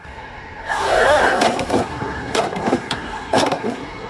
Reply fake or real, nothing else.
fake